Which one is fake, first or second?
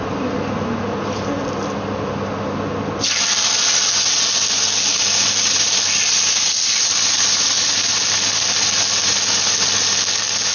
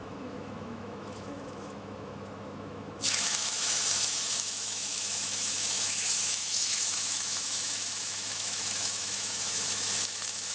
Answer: second